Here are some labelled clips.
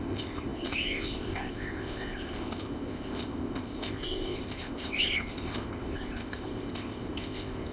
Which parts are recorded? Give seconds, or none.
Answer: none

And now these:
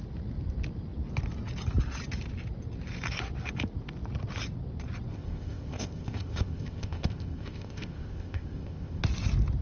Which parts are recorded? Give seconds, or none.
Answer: 0.0-5.1; 9.0-9.6

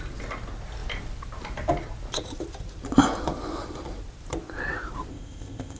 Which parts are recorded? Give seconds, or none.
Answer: 0.0-5.1

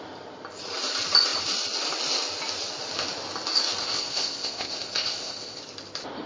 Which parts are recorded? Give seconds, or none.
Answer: 0.0-3.8; 5.6-6.3

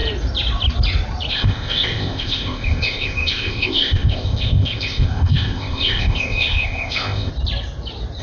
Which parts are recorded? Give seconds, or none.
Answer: 0.0-1.3; 7.3-8.2

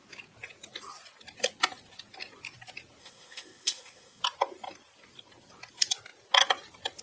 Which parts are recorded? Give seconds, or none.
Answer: 0.0-3.0; 4.2-7.0

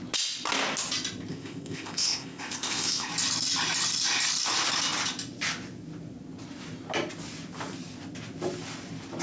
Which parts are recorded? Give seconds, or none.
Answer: 0.0-1.3; 3.1-9.2

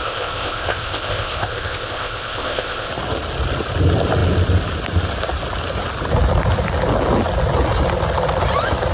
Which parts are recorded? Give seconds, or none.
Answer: 2.9-8.9